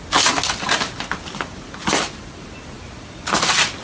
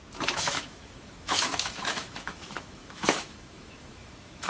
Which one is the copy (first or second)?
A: second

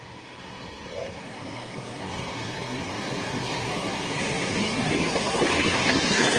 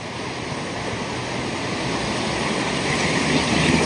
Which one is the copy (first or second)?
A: first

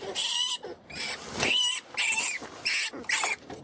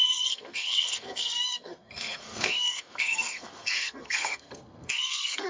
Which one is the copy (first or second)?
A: second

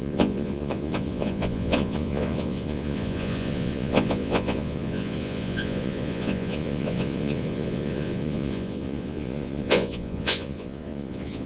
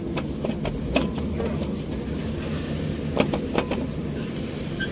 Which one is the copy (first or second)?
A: first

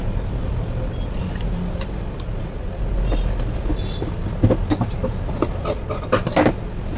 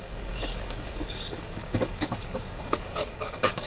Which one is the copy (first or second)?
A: second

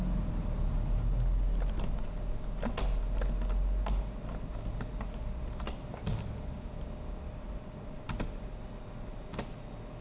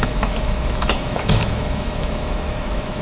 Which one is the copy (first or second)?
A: second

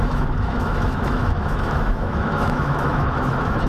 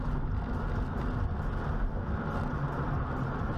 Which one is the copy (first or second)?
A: first